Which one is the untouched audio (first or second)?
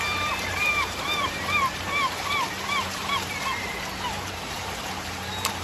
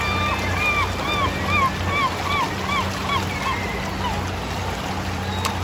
second